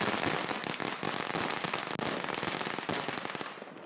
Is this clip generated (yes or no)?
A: no